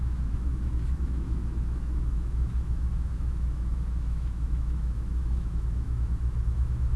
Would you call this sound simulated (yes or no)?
yes